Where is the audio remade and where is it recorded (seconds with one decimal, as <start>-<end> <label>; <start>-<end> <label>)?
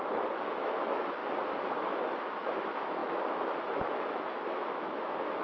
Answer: 0.0-1.2 remade; 1.2-1.7 recorded; 1.7-5.4 remade